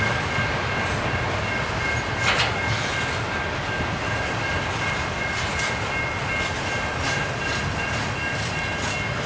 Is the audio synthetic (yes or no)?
no